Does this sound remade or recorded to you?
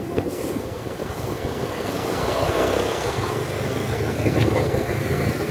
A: remade